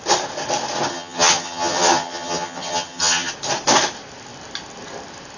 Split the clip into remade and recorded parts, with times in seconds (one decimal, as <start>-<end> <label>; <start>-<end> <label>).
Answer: 0.0-0.9 recorded; 0.9-3.3 remade; 3.3-5.4 recorded